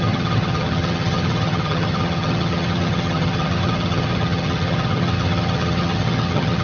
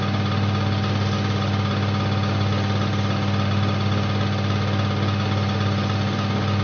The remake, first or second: first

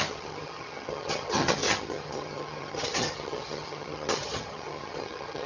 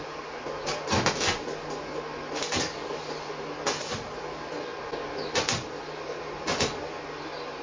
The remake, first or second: first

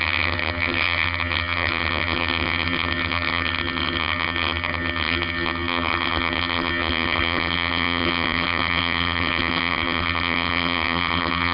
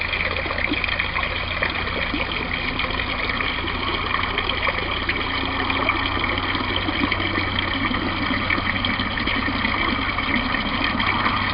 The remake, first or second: first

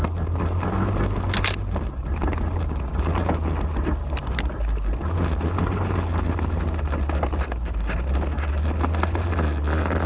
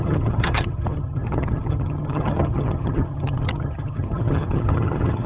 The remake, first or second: second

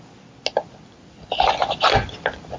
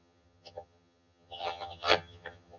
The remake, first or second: second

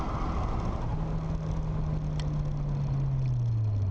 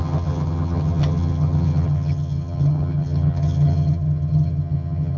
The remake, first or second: second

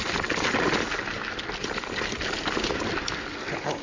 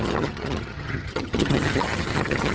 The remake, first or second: second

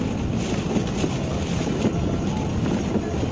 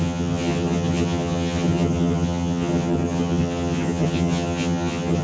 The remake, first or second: second